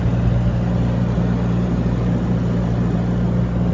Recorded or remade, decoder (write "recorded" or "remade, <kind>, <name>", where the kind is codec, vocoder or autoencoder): recorded